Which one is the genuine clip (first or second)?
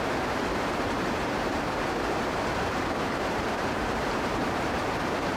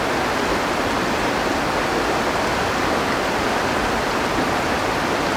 second